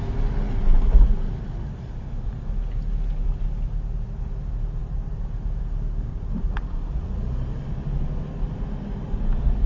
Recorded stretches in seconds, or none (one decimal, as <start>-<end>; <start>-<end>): 0.0-6.1; 7.2-9.7